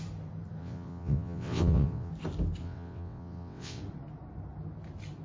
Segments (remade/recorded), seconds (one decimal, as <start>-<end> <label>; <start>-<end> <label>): 0.0-0.6 recorded; 0.6-2.1 remade; 2.1-2.6 recorded; 2.6-3.8 remade; 3.8-5.2 recorded